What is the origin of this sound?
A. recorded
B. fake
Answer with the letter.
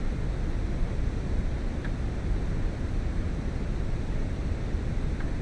A